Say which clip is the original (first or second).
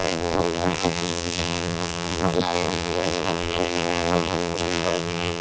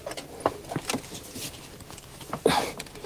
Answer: second